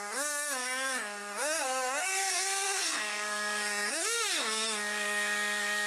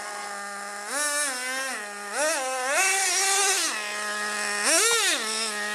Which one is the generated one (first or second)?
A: first